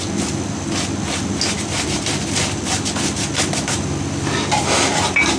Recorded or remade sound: recorded